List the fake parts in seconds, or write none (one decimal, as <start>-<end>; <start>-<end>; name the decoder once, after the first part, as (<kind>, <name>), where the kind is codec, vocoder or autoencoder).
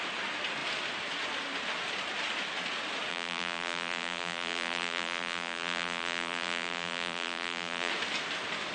3.1-7.9 (vocoder, BigVGAN v2)